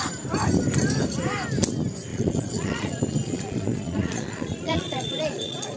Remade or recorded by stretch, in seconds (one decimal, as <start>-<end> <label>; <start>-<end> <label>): 0.0-2.1 recorded; 2.1-5.8 remade